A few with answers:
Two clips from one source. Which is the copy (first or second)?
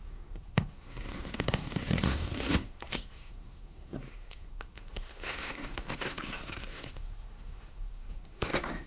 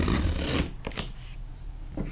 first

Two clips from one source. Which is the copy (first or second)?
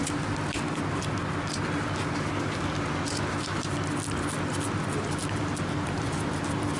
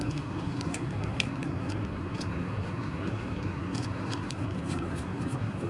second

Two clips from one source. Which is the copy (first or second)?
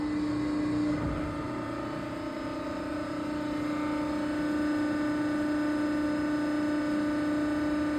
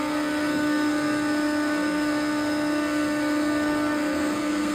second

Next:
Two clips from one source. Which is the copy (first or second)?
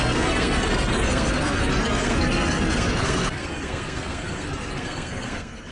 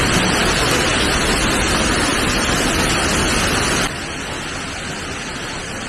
first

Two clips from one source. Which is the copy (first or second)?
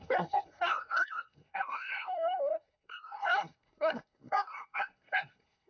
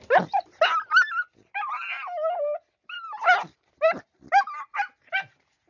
first